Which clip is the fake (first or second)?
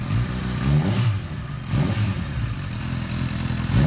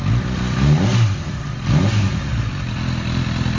first